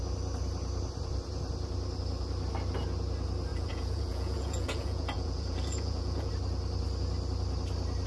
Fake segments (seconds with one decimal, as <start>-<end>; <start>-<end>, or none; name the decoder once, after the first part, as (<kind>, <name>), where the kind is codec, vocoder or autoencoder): 3.5-6.3 (vocoder, Vocos)